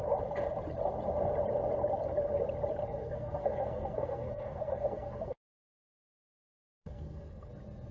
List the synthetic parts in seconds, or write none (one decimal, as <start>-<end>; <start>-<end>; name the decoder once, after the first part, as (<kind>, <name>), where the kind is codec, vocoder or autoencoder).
2.8-7.5 (codec, SNAC)